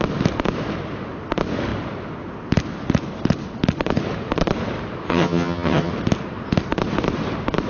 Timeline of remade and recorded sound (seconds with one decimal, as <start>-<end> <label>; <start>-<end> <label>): 0.0-5.1 recorded; 5.1-5.9 remade; 5.9-7.7 recorded